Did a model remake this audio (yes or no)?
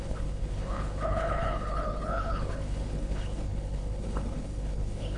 yes